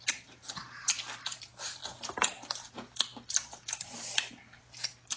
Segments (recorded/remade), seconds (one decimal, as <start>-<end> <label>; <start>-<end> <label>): 0.0-5.2 recorded